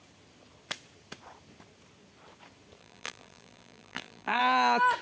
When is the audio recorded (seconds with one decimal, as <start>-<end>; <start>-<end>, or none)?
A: 0.0-2.8; 4.4-5.0